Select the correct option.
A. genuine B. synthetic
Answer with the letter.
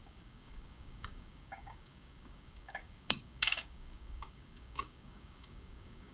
B